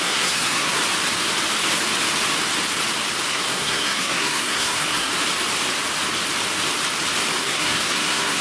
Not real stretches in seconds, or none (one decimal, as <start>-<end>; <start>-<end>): 0.0-0.8; 3.3-5.1; 7.4-8.4